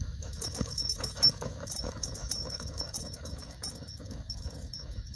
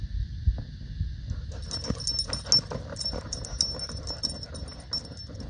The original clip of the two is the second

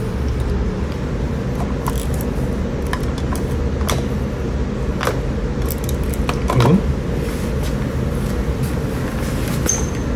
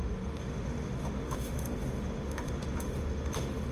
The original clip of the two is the first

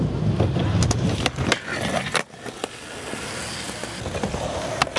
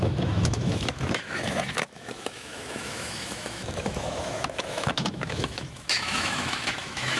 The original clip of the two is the first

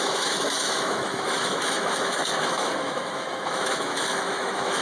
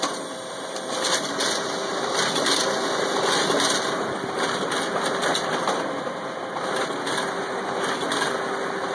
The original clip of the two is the second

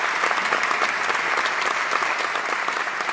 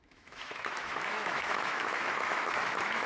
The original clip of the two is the first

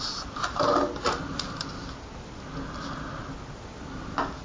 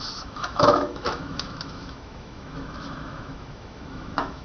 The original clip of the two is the first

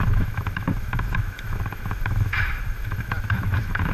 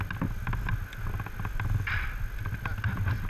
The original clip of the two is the second